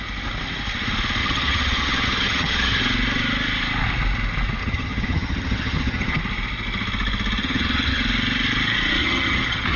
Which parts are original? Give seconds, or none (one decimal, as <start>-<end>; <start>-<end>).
0.0-1.2; 2.8-4.6; 6.2-7.4; 8.0-9.0